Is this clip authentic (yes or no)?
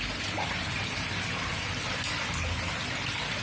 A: yes